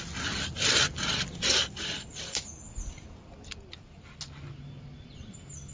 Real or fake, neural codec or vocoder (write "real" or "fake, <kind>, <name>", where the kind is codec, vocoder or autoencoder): real